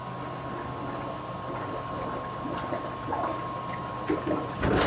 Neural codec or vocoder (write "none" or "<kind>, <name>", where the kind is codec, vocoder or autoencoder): none